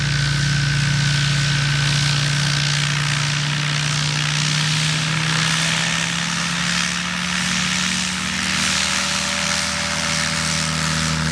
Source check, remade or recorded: recorded